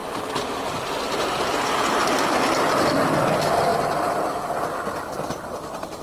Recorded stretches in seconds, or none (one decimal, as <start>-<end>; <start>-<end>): 0.0-6.0